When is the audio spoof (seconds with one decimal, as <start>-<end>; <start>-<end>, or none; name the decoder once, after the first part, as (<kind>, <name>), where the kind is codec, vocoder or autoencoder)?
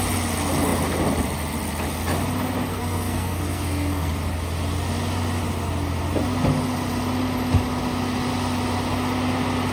2.7-4.1 (codec, SNAC)